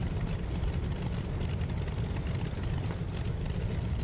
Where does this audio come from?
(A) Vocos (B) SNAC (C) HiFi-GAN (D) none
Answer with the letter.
D